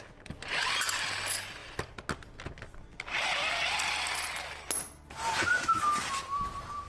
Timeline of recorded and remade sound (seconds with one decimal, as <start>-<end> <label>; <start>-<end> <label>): 0.0-6.9 recorded